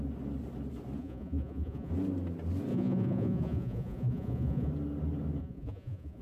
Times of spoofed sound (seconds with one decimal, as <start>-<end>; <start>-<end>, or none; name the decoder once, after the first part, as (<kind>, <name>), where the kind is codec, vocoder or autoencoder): 1.0-1.9 (vocoder, Vocos); 2.7-4.7; 5.4-6.2